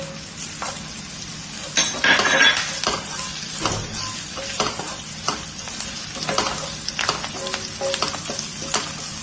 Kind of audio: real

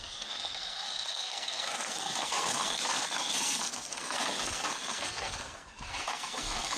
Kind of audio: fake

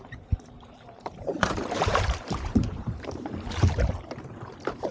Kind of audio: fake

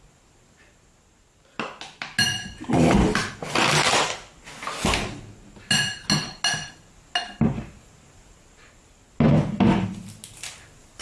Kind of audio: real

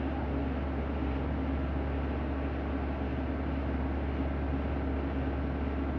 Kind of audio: real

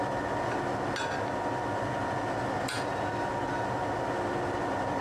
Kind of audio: real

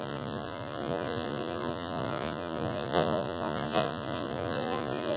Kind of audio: fake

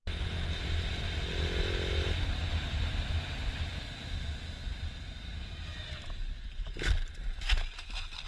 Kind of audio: real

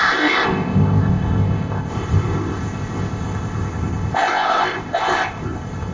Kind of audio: fake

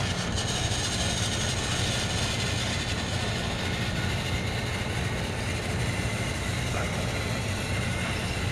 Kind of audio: real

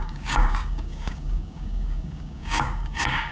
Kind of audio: fake